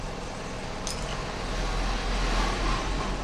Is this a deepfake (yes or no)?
no